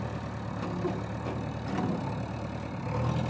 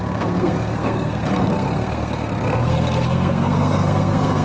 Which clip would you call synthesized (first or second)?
second